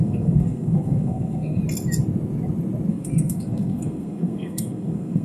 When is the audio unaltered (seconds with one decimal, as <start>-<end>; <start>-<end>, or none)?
1.6-2.9